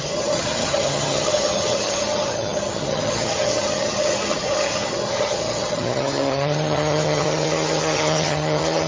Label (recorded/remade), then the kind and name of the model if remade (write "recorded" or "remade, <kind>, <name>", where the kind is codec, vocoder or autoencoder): remade, vocoder, HiFi-GAN